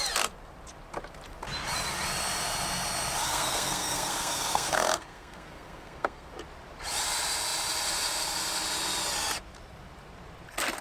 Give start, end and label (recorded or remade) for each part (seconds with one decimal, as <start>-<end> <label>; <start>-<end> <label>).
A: 0.0-3.2 recorded; 3.2-6.3 remade; 6.3-10.8 recorded